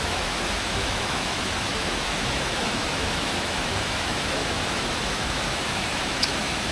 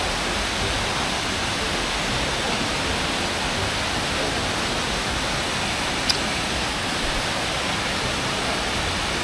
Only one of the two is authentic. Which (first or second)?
second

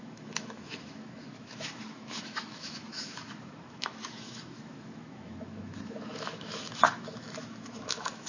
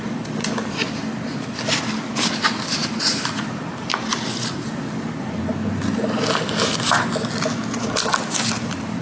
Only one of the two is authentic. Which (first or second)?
second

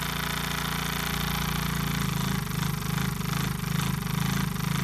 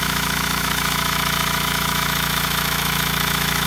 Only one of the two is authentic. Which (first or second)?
first